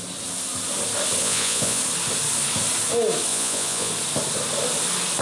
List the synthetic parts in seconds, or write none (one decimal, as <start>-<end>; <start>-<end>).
1.2-1.8; 3.3-3.9